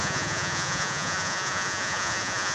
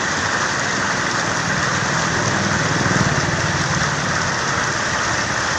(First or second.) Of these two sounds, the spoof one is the first